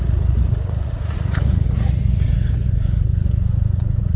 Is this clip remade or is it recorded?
remade